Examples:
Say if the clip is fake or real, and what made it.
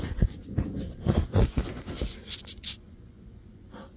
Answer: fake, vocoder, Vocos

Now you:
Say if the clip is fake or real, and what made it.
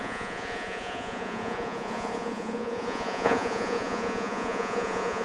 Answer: fake, vocoder, Vocos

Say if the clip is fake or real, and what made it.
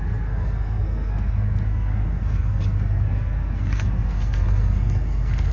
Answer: fake, codec, SNAC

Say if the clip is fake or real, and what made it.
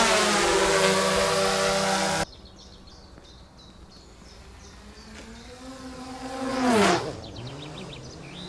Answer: real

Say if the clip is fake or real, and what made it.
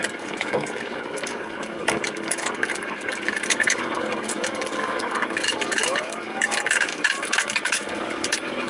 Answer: fake, codec, DAC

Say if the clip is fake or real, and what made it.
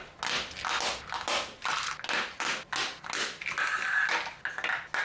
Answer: real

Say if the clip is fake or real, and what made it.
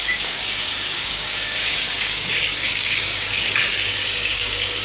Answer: fake, codec, DAC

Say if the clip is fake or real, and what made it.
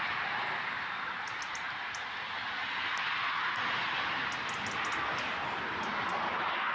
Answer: real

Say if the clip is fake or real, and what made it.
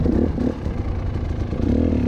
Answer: real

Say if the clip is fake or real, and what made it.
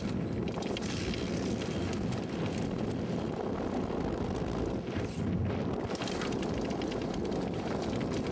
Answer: real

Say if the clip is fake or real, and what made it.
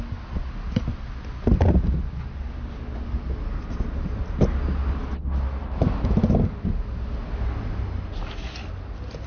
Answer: real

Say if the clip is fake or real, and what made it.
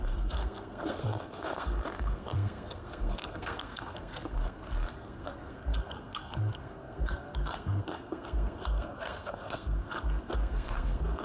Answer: fake, codec, SNAC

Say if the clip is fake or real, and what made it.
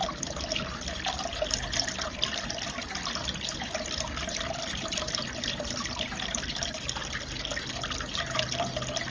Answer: real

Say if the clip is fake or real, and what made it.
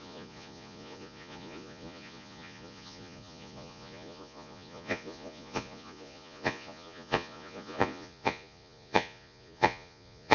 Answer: fake, vocoder, Vocos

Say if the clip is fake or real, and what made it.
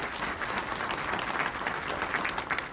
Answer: real